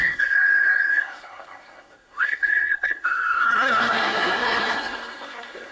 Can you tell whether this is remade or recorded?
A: remade